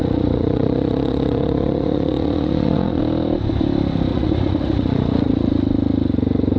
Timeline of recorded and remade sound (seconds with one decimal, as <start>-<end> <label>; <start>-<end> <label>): 0.0-3.0 remade; 3.0-4.1 recorded; 4.1-5.5 remade; 5.5-6.6 recorded